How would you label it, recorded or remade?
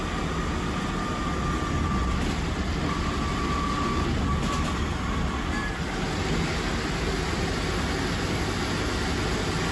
recorded